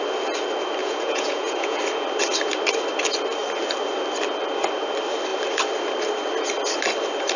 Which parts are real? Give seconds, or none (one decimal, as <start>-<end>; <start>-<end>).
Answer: 0.0-0.8; 1.8-7.4